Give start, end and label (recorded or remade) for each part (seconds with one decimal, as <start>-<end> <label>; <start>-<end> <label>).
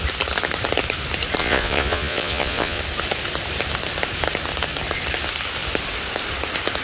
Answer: 0.0-1.4 recorded; 1.4-2.8 remade; 2.8-6.8 recorded